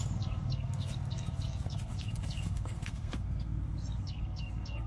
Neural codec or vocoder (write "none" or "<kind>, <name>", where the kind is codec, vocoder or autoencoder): codec, SNAC